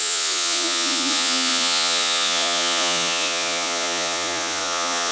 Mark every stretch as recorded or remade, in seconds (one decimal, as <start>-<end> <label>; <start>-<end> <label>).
0.0-5.1 remade